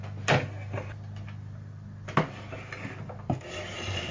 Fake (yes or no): no